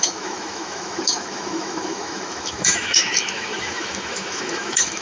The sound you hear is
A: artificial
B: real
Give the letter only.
A